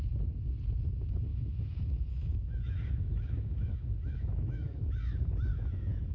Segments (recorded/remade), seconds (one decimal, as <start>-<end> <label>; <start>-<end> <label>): 0.0-1.3 recorded; 1.3-5.0 remade; 5.0-5.5 recorded; 5.5-6.1 remade